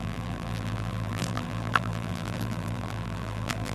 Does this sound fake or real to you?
fake